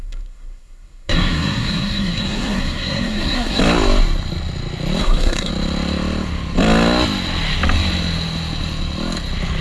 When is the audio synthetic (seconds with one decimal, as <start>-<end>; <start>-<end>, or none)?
0.0-3.6; 5.0-5.5